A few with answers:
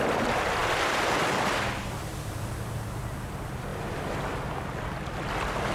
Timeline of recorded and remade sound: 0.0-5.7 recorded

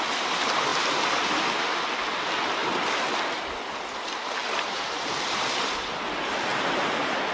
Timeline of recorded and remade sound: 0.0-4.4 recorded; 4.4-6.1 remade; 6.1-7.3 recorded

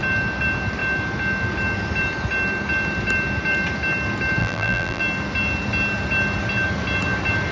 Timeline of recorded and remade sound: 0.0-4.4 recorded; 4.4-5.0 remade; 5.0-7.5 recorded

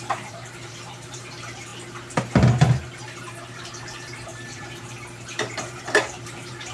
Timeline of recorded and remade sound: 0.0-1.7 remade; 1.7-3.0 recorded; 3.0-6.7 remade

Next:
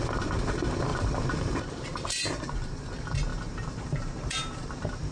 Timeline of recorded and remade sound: 0.0-0.9 recorded; 0.9-2.9 remade; 2.9-3.3 recorded; 3.3-5.1 remade

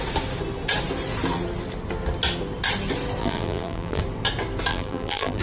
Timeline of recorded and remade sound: 0.0-3.2 recorded; 3.2-4.0 remade; 4.0-4.7 recorded; 4.7-5.4 remade

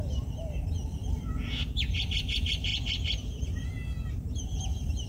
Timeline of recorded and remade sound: 0.0-1.0 remade; 1.0-1.6 recorded; 1.6-2.7 remade; 2.7-4.1 recorded; 4.1-5.1 remade

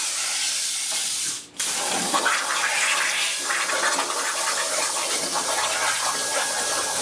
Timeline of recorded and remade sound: 0.0-1.0 recorded; 1.0-3.7 remade; 3.7-7.0 recorded